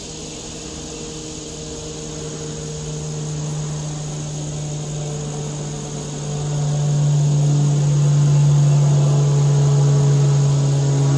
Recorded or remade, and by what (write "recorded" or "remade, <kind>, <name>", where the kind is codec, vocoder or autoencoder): recorded